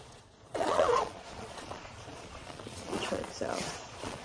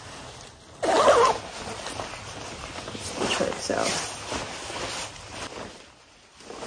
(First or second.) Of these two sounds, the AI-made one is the first